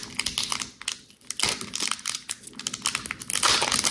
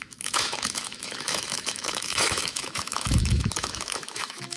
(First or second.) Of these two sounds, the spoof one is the second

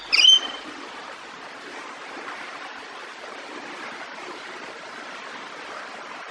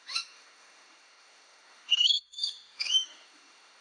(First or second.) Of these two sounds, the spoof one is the second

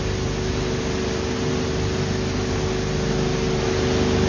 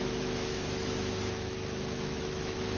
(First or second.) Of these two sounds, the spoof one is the second